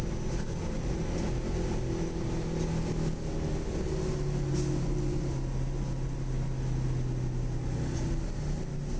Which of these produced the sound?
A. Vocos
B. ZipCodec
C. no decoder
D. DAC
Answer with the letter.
C